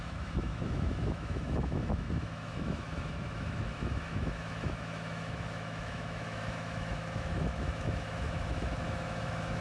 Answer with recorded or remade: remade